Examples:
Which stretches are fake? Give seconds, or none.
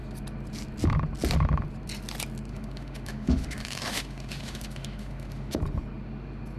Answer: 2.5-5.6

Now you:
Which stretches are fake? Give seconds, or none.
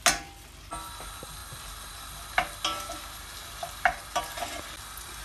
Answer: none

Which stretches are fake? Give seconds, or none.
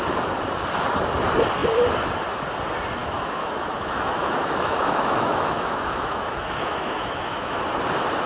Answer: 3.0-7.6